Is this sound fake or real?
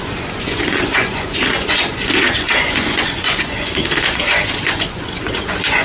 fake